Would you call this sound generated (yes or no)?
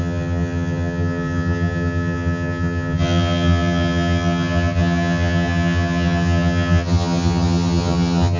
yes